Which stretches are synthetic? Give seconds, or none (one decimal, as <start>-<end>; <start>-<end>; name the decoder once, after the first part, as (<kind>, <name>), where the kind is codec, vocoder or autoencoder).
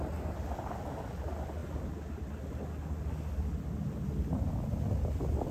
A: none